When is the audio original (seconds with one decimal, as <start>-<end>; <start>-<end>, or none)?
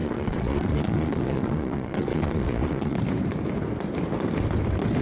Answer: 3.0-5.0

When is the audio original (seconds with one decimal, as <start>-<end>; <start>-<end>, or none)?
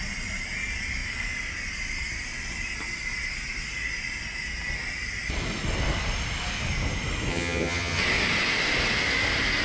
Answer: 0.0-7.3; 8.0-9.6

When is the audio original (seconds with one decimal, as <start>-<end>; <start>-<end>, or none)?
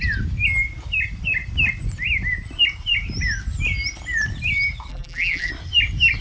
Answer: 0.0-4.9; 5.5-6.2